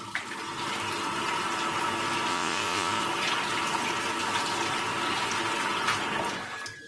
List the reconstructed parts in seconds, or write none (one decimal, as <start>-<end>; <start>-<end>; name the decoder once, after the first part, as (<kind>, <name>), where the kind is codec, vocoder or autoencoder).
2.3-3.0 (vocoder, Vocos)